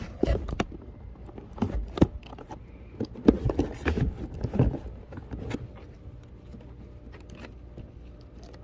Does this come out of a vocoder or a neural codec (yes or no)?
no